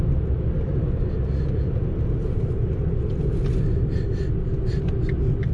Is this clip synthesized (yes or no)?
no